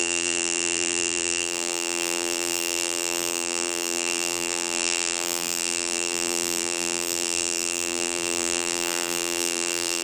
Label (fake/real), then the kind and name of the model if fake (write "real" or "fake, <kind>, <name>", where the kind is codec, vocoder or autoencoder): fake, vocoder, BigVGAN v2